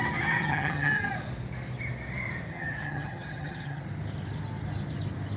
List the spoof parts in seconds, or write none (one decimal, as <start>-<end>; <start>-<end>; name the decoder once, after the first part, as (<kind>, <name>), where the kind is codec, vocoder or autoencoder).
0.4-1.1 (vocoder, HiFi-GAN); 2.5-3.8